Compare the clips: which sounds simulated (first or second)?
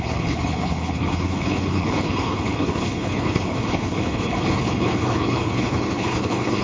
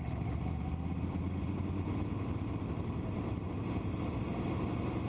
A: first